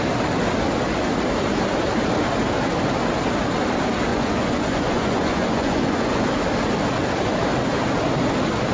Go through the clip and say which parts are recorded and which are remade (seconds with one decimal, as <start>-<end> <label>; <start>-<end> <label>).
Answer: 0.0-4.1 recorded; 4.1-6.2 remade; 6.2-8.7 recorded